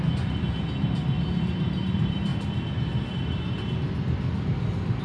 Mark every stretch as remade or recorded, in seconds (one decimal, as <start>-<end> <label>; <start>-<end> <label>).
0.0-5.0 recorded